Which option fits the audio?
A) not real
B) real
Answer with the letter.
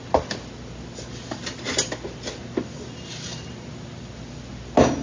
B